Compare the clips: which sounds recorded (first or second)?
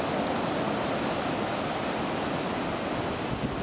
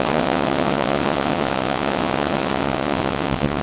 first